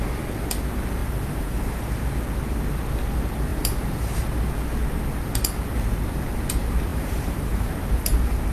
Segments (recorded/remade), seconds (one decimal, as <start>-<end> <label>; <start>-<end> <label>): 0.0-1.0 recorded; 1.0-1.8 remade; 1.8-3.5 recorded; 3.5-4.2 remade; 4.2-6.9 recorded; 6.9-7.7 remade; 7.7-8.5 recorded